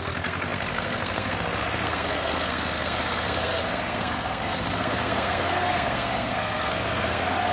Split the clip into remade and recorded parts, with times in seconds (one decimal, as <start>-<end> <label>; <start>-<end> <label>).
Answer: 0.0-7.5 remade